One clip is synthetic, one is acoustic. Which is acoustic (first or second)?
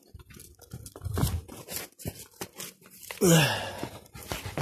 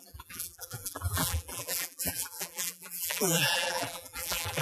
first